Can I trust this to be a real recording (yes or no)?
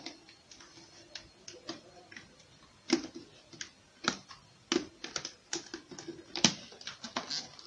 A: yes